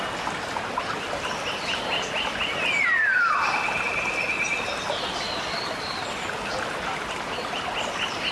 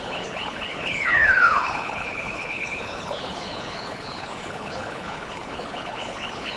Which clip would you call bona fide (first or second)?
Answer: first